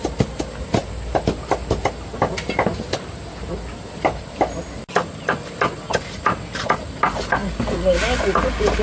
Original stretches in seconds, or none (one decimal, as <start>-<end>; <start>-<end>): 0.0-8.8